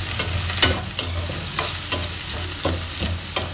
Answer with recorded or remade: recorded